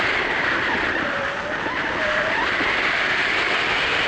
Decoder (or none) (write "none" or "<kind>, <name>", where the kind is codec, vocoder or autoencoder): none